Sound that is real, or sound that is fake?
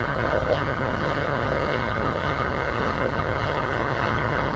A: fake